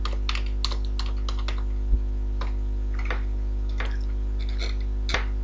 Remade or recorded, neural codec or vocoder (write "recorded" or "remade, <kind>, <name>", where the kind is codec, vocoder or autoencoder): recorded